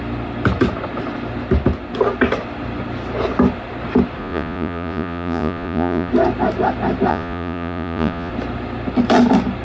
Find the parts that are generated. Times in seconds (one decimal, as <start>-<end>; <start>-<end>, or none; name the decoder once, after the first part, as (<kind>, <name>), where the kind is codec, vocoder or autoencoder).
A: 4.2-6.1 (vocoder, Vocos); 7.1-8.3